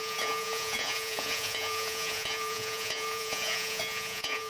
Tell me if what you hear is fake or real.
fake